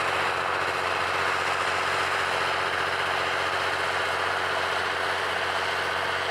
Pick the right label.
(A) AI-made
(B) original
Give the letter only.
B